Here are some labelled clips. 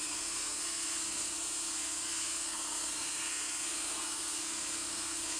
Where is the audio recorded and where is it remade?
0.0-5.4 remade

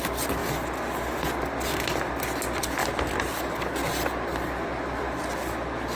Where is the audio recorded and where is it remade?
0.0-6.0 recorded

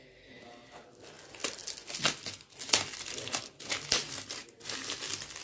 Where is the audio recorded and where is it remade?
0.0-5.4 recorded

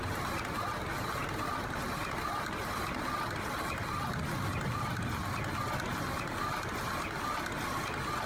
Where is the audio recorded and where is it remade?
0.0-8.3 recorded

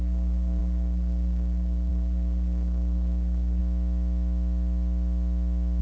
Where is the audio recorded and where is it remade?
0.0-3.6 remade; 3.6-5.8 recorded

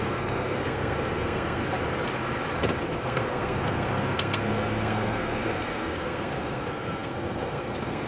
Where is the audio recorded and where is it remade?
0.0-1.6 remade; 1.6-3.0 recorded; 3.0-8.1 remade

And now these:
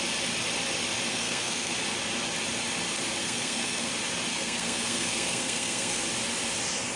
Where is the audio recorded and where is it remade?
0.0-1.1 recorded; 1.1-1.7 remade; 1.7-3.2 recorded; 3.2-3.9 remade; 3.9-4.3 recorded; 4.3-6.0 remade; 6.0-7.0 recorded